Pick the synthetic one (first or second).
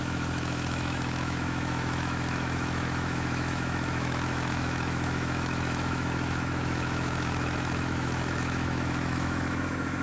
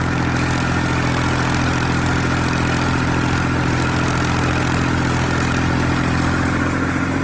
first